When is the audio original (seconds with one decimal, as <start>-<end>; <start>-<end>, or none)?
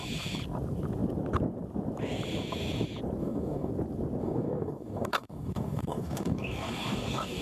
0.0-3.2; 3.7-4.2